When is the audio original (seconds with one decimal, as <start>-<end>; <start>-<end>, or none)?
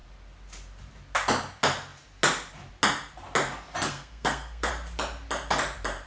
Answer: 0.0-3.9; 4.7-6.1